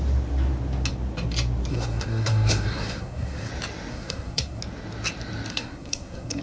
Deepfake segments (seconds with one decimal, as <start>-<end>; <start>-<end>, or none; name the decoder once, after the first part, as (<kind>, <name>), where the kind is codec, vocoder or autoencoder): 1.7-3.5 (codec, SNAC); 3.9-4.6; 5.5-6.4